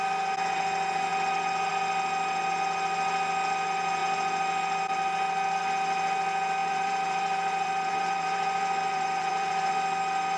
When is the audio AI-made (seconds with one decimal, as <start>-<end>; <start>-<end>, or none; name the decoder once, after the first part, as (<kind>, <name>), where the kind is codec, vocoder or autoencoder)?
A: 6.6-9.7 (vocoder, BigVGAN v2)